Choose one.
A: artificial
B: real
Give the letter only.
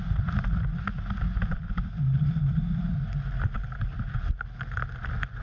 B